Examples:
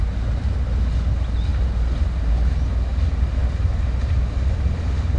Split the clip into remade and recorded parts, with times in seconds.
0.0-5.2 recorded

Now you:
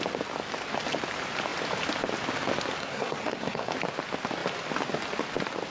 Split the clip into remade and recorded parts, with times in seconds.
0.0-2.8 recorded; 2.8-3.7 remade; 3.7-5.7 recorded

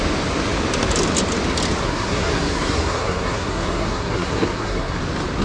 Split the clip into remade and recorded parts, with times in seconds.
0.0-1.8 recorded; 1.8-5.0 remade; 5.0-5.4 recorded